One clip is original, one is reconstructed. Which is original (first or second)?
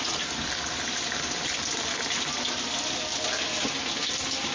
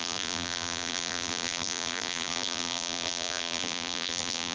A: first